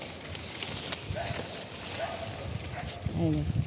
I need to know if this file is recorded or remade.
recorded